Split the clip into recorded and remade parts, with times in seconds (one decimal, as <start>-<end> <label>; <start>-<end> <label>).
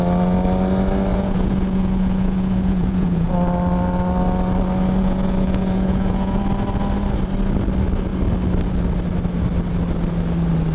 0.0-1.1 recorded; 1.1-3.3 remade; 3.3-5.0 recorded; 5.0-6.4 remade; 6.4-10.7 recorded